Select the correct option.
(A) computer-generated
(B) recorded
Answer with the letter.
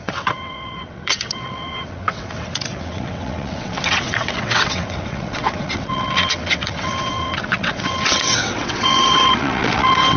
A